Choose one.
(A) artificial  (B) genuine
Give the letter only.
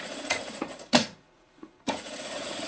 A